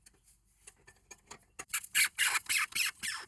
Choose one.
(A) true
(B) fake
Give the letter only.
A